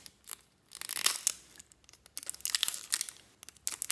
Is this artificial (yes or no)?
no